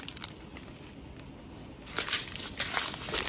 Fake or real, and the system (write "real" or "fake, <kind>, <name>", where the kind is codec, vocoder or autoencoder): real